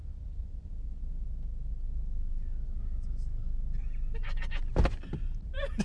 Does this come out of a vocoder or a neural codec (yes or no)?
no